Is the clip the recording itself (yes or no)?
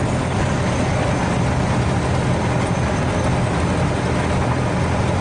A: yes